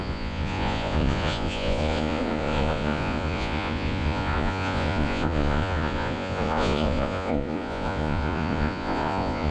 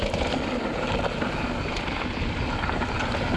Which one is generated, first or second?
first